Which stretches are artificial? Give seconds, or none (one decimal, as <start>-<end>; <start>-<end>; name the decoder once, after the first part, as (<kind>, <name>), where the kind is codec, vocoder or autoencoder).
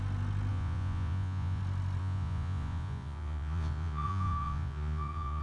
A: 0.5-1.6 (vocoder, Vocos); 2.0-5.4